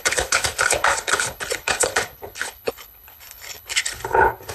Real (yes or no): no